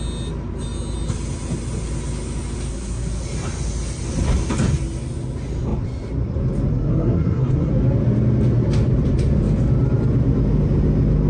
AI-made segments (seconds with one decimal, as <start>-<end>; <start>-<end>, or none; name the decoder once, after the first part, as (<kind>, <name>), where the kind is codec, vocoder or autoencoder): 2.7-3.2 (codec, SNAC); 6.7-7.7